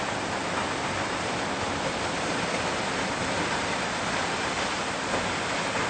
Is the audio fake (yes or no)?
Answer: no